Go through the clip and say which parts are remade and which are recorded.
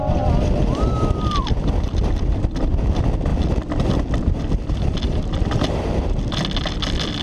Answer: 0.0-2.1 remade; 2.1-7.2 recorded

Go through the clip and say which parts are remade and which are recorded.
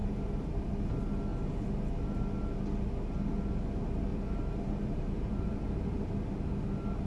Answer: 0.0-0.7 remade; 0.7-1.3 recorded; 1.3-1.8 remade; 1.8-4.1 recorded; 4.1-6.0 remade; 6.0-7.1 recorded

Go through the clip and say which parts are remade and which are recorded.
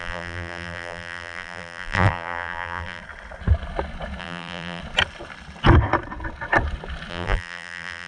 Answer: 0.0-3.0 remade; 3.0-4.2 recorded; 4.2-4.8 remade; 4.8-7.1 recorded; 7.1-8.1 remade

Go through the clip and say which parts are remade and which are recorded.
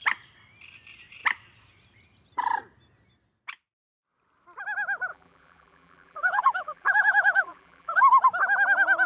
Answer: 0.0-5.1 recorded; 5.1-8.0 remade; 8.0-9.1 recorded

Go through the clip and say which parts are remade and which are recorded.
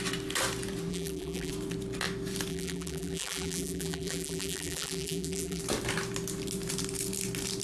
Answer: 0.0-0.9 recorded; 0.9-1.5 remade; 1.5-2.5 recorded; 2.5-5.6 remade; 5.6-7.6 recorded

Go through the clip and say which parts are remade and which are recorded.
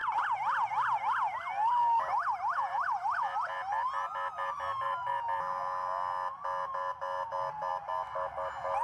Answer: 0.0-8.8 recorded